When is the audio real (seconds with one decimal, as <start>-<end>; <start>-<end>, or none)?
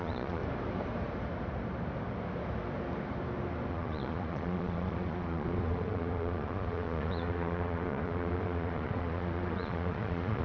0.4-3.7